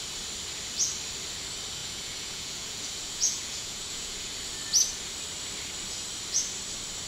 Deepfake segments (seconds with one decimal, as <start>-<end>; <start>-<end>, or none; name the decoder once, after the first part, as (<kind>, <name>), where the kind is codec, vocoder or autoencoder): 1.8-4.3 (vocoder, Vocos)